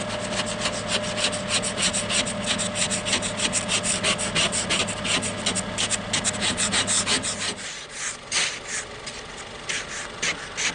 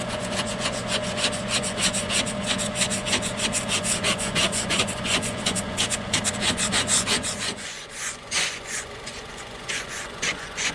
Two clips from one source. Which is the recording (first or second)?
first